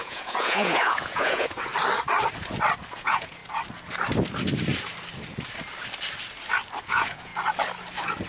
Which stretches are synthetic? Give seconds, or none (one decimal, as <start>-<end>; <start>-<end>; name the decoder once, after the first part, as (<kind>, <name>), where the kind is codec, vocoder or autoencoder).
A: 0.0-1.7 (vocoder, Vocos); 2.9-3.4; 6.8-7.3